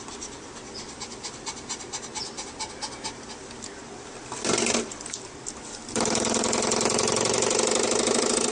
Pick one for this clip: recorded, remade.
recorded